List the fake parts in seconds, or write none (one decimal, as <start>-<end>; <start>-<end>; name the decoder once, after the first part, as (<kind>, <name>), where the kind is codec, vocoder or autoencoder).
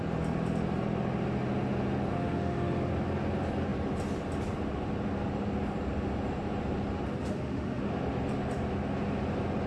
2.1-2.9 (autoencoder, DAC-VAE); 7.2-7.8